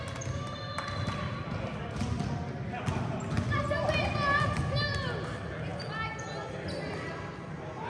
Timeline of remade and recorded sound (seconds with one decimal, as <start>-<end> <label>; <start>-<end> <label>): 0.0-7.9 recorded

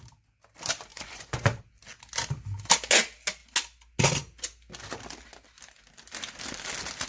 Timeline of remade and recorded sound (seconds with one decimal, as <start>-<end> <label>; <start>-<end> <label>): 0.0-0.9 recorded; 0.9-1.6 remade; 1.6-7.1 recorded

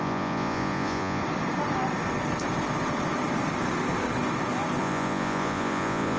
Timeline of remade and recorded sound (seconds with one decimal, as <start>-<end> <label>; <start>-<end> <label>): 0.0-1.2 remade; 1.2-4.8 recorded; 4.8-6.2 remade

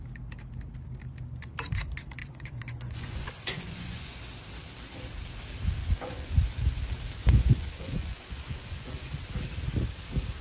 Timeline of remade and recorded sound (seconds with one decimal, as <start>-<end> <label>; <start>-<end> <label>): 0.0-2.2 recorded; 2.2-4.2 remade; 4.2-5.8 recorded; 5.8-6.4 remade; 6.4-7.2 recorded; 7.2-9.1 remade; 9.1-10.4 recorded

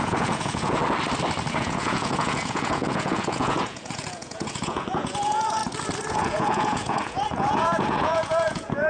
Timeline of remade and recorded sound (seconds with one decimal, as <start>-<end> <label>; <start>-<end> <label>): 0.0-0.8 remade; 0.8-1.5 recorded; 1.5-5.6 remade; 5.6-6.1 recorded; 6.1-8.9 remade

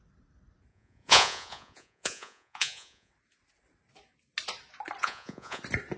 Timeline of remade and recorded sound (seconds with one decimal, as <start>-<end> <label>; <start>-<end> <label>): 0.0-0.7 recorded; 0.7-3.1 remade; 3.1-5.0 recorded; 5.0-5.6 remade; 5.6-6.0 recorded